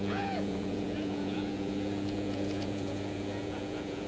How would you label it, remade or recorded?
remade